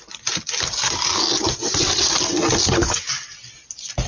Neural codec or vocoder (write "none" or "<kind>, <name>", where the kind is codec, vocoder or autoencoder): none